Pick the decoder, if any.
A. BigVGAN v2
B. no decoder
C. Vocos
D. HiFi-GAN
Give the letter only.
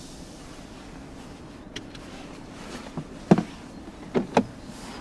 B